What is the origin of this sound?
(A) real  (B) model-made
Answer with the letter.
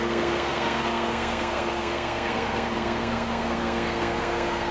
B